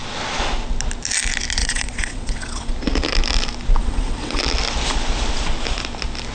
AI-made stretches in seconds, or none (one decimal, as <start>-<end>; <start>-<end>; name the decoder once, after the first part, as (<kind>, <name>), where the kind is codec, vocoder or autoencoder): 1.6-2.7 (vocoder, WaveNeXt); 3.8-4.4